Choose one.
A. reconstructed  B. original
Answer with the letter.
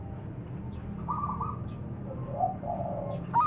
B